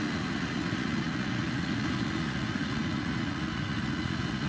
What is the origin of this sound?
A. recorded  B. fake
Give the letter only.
B